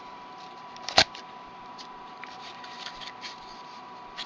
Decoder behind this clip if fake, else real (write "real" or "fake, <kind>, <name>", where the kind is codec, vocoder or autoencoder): fake, vocoder, BigVGAN v2